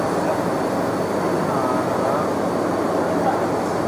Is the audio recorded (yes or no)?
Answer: yes